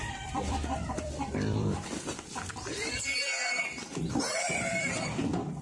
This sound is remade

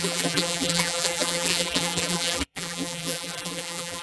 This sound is remade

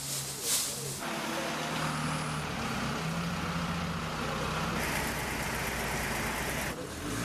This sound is recorded